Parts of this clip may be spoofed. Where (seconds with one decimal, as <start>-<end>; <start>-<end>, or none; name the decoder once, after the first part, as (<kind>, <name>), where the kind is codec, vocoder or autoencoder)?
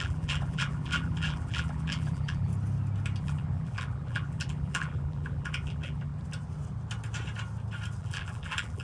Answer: 0.0-2.5 (vocoder, BigVGAN v2); 3.2-6.1; 8.0-8.8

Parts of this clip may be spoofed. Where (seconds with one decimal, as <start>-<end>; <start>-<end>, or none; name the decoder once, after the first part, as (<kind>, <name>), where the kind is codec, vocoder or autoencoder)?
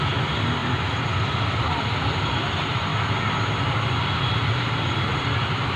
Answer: 0.0-2.9 (vocoder, BigVGAN v2); 4.0-5.8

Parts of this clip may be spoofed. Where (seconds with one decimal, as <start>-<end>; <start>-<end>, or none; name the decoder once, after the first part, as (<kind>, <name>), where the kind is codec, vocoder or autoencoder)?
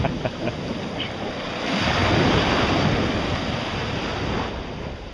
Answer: none